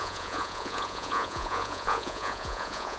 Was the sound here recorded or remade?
remade